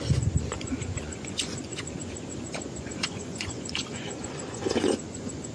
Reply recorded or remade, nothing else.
remade